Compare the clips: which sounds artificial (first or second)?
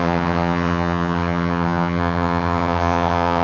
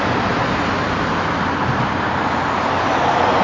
first